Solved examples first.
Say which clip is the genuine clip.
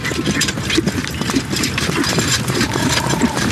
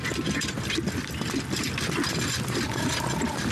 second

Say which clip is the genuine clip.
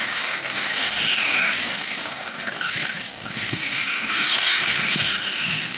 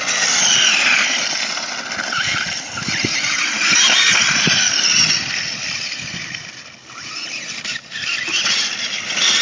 second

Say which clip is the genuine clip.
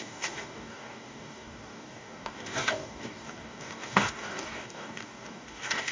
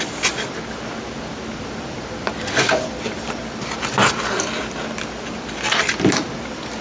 second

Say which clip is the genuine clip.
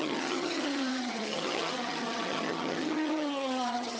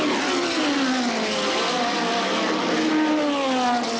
second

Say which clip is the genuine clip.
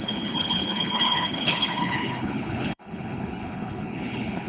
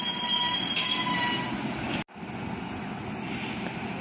second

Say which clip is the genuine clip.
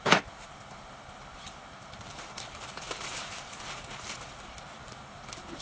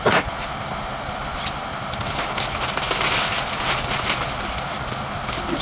second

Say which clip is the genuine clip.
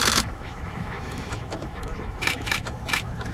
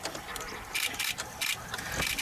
second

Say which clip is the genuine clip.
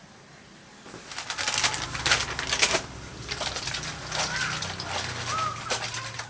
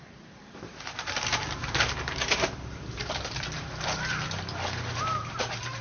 first